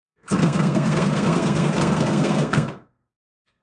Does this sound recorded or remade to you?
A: remade